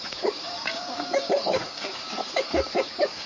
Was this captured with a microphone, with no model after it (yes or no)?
no